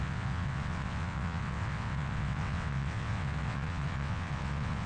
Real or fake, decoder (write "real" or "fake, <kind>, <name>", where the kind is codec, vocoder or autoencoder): fake, vocoder, WaveNeXt